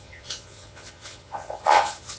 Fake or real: fake